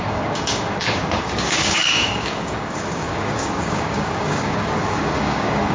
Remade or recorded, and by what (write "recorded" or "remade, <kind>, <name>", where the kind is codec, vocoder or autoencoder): remade, codec, DAC